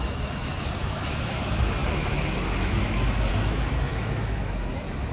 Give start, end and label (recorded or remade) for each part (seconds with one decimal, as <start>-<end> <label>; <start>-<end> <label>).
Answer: 0.0-5.1 remade